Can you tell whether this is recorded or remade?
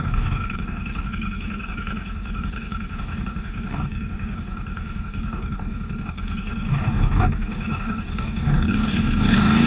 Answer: remade